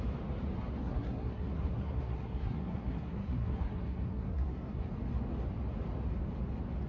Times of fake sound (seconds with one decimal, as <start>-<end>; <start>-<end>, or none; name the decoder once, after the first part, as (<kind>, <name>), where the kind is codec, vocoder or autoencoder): 0.8-4.9 (codec, SNAC)